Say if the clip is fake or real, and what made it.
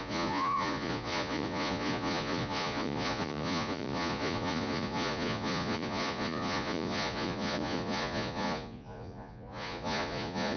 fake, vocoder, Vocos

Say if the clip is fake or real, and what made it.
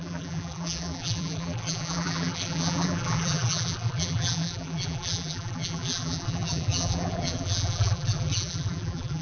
fake, vocoder, BigVGAN v2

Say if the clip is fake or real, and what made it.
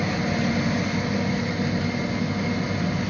real